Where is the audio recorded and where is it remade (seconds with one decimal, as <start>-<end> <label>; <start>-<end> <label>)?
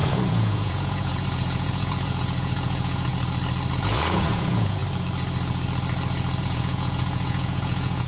0.0-3.1 remade; 3.1-3.7 recorded; 3.7-4.8 remade; 4.8-6.4 recorded; 6.4-8.1 remade